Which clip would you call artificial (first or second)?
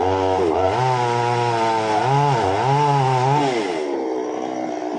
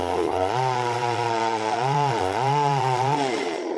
second